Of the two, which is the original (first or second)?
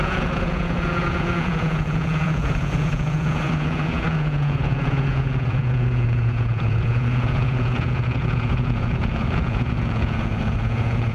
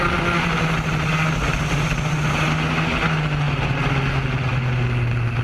second